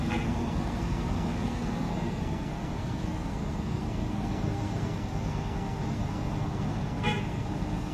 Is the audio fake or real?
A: fake